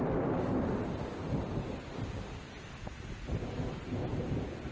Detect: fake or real real